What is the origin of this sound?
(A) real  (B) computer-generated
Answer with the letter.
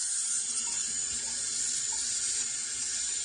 A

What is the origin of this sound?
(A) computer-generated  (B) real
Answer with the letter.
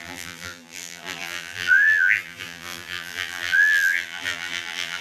A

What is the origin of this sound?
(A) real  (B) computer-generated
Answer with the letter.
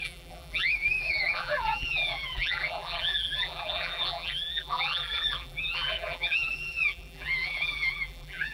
B